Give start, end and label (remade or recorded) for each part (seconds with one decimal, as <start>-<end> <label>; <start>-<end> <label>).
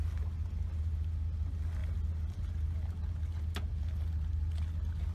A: 0.0-5.1 recorded